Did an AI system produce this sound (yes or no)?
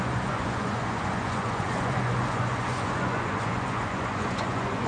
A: yes